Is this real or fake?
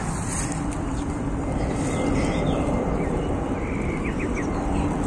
fake